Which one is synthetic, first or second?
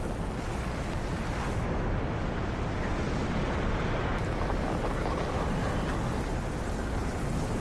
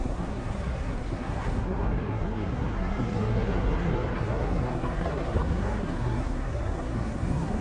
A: second